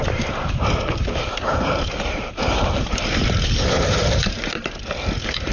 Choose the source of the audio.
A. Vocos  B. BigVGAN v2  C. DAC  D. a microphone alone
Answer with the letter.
B